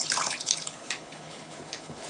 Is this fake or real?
fake